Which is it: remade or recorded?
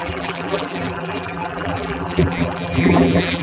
remade